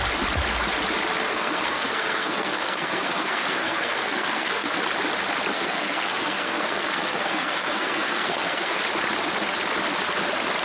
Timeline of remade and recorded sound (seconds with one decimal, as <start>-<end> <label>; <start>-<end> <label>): 0.0-1.3 recorded; 1.3-4.7 remade; 4.7-5.5 recorded; 5.5-8.8 remade; 8.8-10.6 recorded